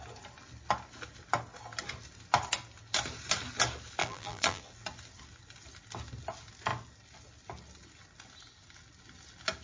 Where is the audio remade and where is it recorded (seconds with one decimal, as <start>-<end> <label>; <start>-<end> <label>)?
0.0-4.0 recorded; 4.0-4.6 remade; 4.6-9.6 recorded